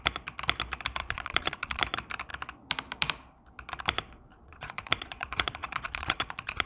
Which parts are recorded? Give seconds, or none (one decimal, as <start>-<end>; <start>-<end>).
0.0-1.0; 1.8-4.3